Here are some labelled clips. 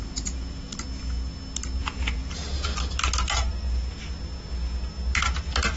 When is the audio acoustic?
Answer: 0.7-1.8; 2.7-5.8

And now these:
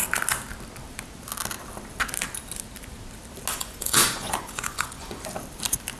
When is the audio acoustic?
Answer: 0.0-3.5; 5.2-6.0

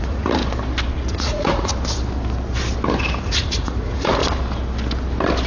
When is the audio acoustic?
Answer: 0.4-1.1; 1.7-3.2; 4.2-5.5

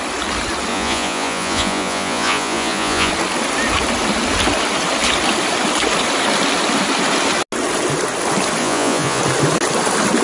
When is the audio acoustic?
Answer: 0.0-0.7; 3.1-8.6; 9.2-10.2

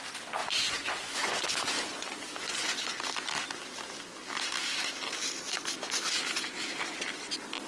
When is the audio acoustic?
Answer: 0.0-0.4; 2.9-7.7

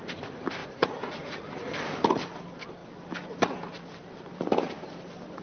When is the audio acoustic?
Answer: 0.0-0.6; 1.5-5.4